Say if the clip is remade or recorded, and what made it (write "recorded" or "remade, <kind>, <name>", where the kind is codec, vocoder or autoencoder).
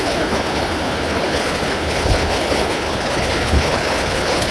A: remade, codec, HILCodec